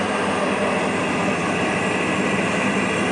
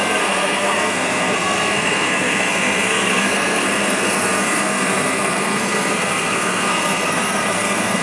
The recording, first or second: first